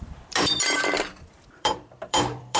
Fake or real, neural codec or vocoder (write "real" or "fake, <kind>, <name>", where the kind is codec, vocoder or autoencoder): fake, vocoder, BigVGAN v2